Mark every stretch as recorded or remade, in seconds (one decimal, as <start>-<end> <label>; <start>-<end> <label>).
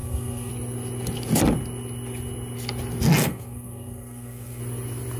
0.0-0.5 remade; 0.5-3.2 recorded; 3.2-4.6 remade; 4.6-5.2 recorded